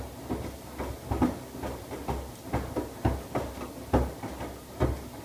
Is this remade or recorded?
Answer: recorded